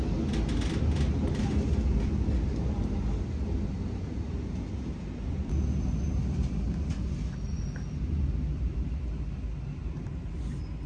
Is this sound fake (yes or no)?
no